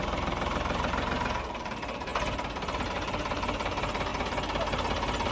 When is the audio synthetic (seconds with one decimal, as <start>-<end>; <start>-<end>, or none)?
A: 0.0-2.1; 2.9-4.1